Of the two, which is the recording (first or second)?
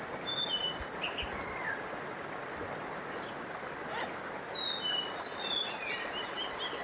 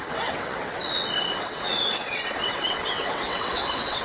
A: first